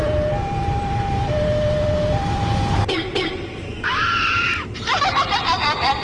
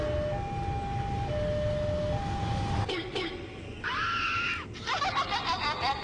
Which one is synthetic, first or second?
first